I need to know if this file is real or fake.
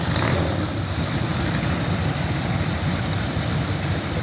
real